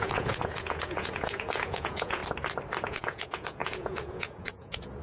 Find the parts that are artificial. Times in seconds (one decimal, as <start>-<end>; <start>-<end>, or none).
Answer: 0.0-2.2; 2.9-5.0